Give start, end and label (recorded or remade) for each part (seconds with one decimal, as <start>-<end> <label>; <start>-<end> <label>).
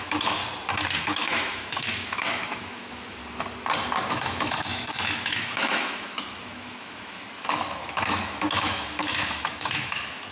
0.0-0.4 remade; 0.4-1.0 recorded; 1.0-3.2 remade; 3.2-4.1 recorded; 4.1-10.3 remade